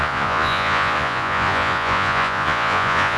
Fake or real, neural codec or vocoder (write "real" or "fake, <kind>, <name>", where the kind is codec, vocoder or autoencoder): fake, vocoder, Vocos